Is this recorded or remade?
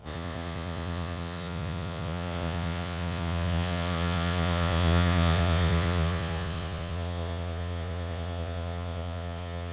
remade